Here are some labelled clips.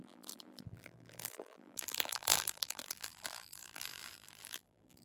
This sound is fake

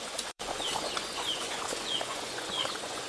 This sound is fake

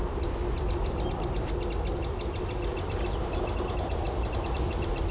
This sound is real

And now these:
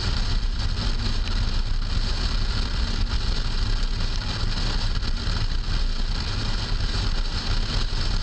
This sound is real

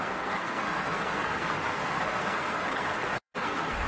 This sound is fake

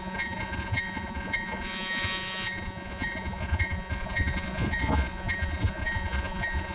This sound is fake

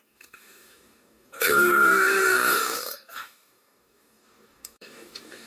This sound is fake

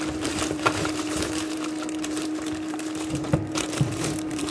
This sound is fake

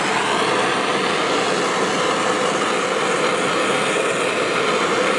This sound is real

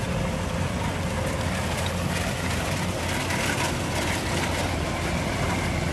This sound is fake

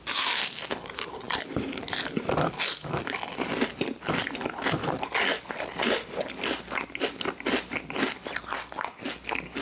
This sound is real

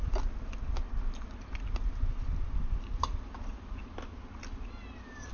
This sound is real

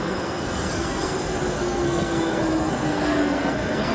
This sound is fake